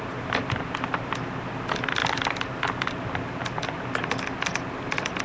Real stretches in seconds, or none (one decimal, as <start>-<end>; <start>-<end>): 0.0-5.2